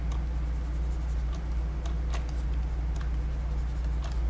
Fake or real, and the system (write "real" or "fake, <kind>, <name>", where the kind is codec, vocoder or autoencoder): real